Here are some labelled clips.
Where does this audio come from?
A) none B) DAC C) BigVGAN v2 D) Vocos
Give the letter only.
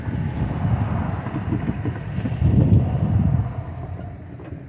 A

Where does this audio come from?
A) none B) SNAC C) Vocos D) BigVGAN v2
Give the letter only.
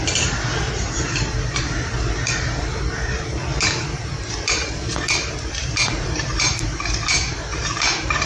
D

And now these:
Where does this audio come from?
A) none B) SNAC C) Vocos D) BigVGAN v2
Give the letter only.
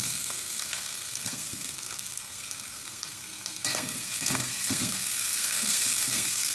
B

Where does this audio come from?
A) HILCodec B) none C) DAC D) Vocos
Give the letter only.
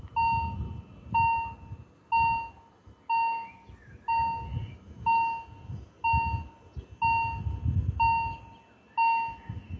B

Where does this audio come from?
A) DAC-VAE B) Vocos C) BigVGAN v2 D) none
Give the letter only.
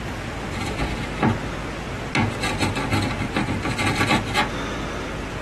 D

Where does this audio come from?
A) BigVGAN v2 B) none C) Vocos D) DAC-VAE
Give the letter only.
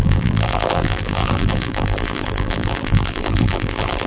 A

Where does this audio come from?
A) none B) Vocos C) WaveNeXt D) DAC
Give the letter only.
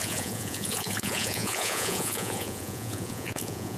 B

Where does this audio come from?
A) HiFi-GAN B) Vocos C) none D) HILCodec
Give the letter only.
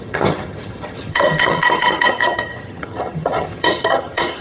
A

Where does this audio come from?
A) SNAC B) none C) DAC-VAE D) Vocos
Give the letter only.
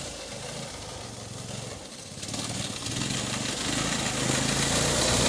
B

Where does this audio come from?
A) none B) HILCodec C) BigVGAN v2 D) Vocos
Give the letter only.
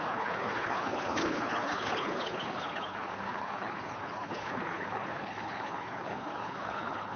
B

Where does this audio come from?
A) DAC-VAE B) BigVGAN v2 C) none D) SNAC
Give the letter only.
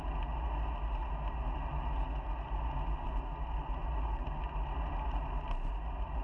C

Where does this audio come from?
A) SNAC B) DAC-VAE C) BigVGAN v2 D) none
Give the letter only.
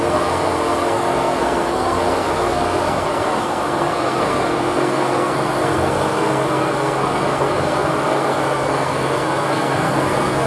A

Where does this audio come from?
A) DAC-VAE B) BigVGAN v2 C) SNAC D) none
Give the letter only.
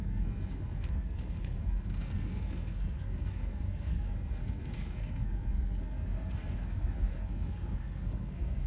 C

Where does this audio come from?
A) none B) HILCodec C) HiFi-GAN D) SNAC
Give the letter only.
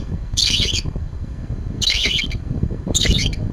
D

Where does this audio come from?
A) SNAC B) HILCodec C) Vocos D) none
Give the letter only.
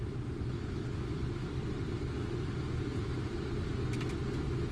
D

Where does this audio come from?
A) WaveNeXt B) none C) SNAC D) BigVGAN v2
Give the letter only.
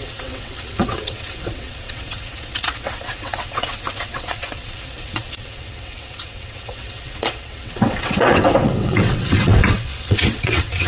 A